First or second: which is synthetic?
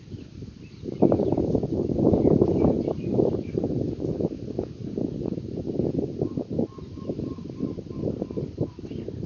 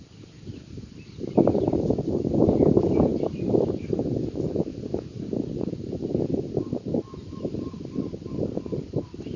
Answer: second